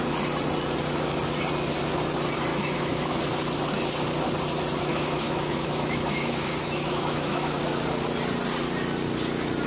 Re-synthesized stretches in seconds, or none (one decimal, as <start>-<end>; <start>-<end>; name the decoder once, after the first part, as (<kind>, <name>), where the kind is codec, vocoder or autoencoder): 2.5-3.2 (autoencoder, DAC-VAE); 4.9-7.6